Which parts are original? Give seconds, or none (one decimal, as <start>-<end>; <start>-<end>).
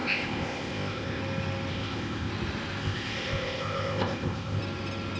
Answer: 1.2-1.7; 2.3-2.8; 4.6-5.2